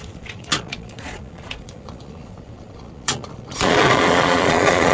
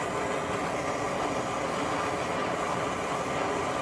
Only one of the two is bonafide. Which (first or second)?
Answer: second